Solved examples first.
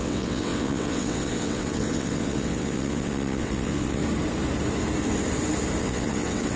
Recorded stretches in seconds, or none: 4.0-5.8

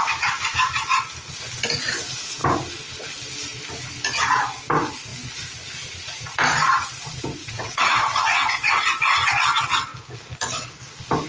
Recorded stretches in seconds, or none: 0.0-7.4; 8.7-11.3

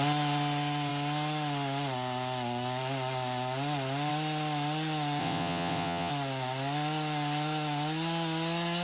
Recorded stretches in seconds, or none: 0.0-5.2; 6.1-8.8

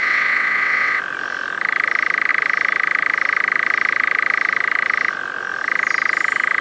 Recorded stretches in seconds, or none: 1.0-6.6